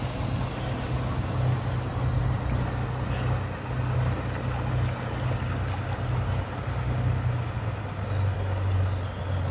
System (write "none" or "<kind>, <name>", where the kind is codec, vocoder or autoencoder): none